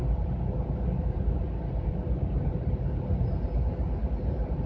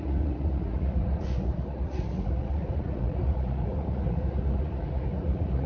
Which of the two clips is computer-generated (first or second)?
second